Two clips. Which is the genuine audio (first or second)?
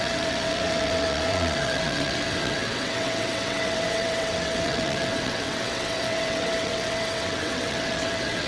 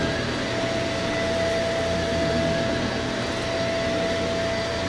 second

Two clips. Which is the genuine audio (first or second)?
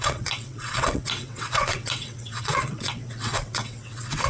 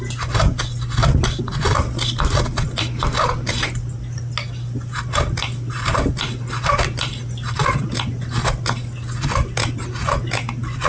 second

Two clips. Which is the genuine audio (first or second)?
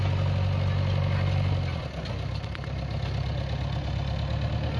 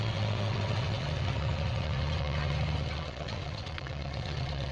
first